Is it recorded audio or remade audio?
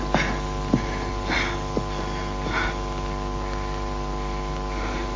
recorded